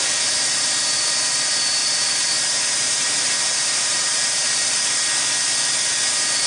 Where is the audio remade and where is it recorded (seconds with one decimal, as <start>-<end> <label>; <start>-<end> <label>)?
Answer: 0.0-1.8 recorded; 1.8-5.0 remade; 5.0-6.5 recorded